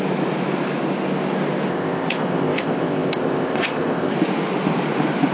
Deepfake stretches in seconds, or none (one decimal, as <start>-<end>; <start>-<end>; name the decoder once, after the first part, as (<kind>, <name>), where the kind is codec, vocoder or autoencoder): 1.7-4.1 (codec, ZipCodec)